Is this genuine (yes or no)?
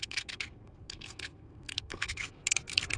no